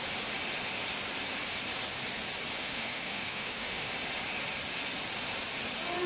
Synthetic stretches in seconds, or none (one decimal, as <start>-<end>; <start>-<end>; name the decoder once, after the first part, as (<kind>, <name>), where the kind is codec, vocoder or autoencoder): 2.6-3.9 (autoencoder, DAC-VAE)